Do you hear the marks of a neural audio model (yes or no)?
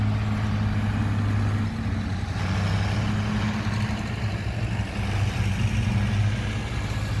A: no